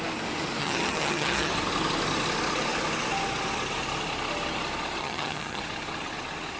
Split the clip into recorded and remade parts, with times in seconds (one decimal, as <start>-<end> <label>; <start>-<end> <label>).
0.0-0.6 recorded; 0.6-1.5 remade; 1.5-5.0 recorded; 5.0-5.6 remade; 5.6-6.6 recorded